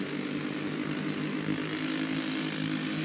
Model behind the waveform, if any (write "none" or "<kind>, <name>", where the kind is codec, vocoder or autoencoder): none